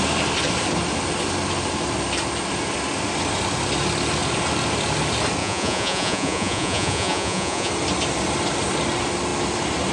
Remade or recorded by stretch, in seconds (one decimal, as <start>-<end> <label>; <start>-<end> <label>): 0.0-5.4 recorded; 5.4-7.7 remade; 7.7-9.9 recorded